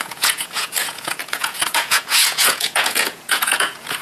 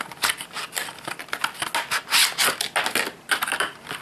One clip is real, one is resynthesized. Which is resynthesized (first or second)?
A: first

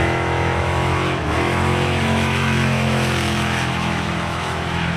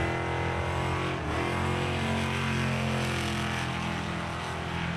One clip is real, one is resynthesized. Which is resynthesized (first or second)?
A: first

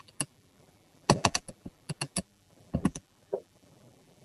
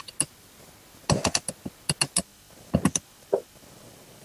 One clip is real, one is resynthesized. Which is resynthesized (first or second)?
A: first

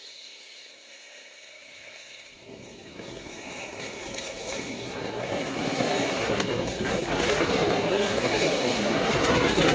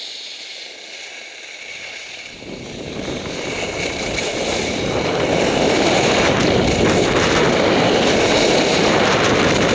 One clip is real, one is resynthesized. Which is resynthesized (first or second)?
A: first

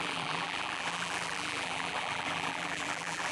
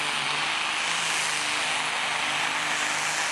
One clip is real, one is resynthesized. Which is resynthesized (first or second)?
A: first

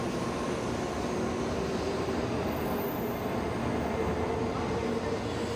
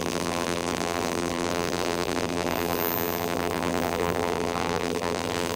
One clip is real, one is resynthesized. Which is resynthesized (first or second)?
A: second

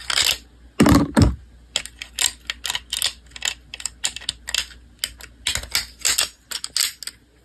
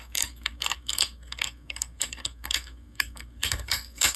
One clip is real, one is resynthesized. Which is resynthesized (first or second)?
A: second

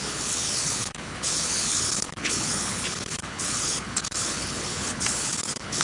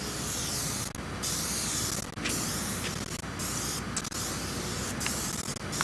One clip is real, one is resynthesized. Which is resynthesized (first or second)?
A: first